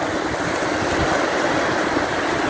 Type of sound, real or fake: real